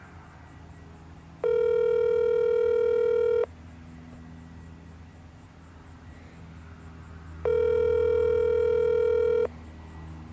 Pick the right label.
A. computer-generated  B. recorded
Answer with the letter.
B